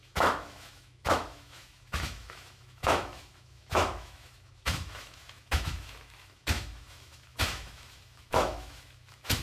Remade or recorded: remade